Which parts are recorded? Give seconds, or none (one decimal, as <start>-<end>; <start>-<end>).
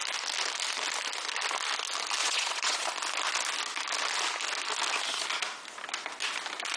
0.0-2.2; 2.9-6.8